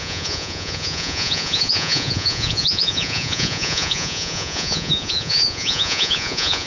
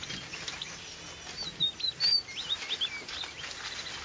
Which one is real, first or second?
second